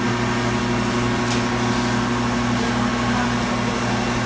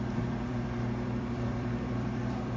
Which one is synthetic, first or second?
second